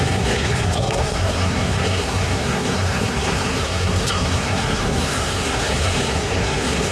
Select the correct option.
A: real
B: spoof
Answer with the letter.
B